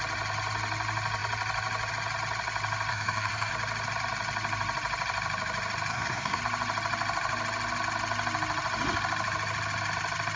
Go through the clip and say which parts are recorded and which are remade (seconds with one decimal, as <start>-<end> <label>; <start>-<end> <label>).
0.0-2.9 recorded; 2.9-3.5 remade; 3.5-5.9 recorded; 5.9-6.4 remade; 6.4-10.4 recorded